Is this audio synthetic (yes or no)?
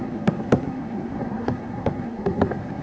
yes